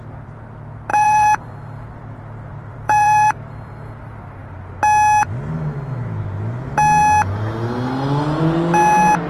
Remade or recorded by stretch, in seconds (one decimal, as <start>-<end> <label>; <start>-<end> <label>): 0.0-0.9 recorded; 0.9-4.0 remade; 4.0-9.3 recorded

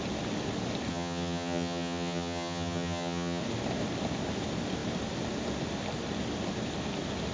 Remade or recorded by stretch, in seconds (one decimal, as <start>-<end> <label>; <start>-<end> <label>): 0.0-0.9 recorded; 0.9-3.4 remade; 3.4-7.3 recorded

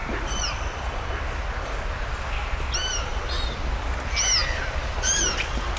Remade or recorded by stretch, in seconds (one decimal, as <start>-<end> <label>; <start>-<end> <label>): 0.0-4.4 recorded; 4.4-5.2 remade; 5.2-5.8 recorded

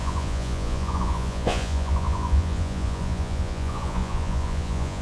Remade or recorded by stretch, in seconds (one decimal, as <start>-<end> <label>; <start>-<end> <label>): 0.0-5.0 remade